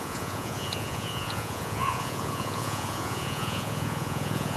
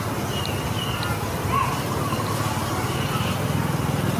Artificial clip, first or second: first